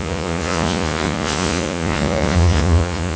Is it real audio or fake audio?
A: fake